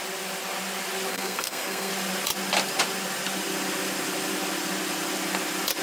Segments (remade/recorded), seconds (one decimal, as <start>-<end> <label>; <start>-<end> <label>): 0.0-1.1 recorded; 1.1-1.9 remade; 1.9-5.8 recorded